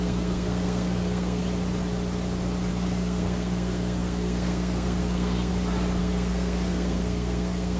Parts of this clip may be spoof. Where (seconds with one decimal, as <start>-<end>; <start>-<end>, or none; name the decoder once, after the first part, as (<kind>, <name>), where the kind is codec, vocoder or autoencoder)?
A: 0.0-1.4 (codec, SNAC); 2.7-5.5; 6.0-7.8